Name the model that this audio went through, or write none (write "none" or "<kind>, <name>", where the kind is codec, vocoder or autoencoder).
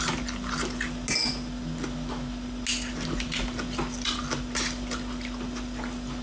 none